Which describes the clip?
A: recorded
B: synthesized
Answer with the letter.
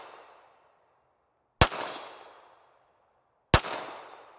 A